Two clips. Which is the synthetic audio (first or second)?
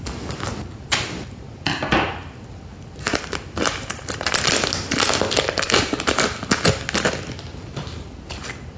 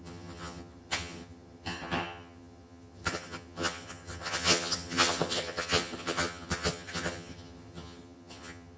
second